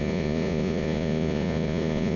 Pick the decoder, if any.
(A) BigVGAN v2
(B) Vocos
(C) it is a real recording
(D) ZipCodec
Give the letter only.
B